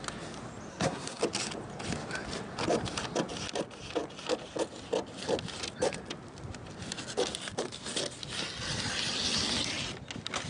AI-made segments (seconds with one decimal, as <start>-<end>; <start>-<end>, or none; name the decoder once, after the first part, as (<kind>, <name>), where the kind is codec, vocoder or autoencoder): 0.7-1.2 (codec, SNAC)